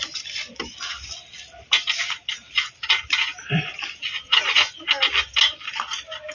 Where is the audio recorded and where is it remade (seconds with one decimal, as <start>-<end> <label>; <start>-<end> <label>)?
0.0-4.0 recorded; 4.0-4.8 remade; 4.8-6.3 recorded